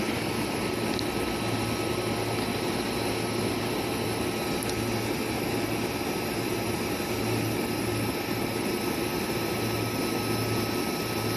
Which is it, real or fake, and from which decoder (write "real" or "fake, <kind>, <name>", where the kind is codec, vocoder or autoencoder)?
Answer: real